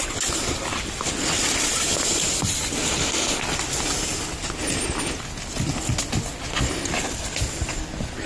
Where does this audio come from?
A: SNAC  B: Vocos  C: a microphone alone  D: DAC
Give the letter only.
C